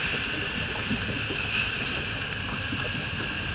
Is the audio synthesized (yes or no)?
yes